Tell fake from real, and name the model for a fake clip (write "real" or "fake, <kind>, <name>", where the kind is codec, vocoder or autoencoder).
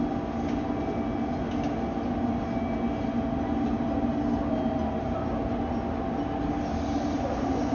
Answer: real